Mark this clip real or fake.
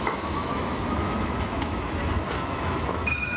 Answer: fake